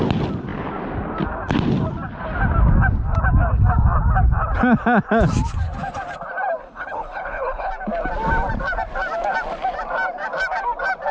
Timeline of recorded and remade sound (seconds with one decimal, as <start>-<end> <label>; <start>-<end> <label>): 0.0-6.6 recorded; 6.6-7.7 remade; 7.7-11.1 recorded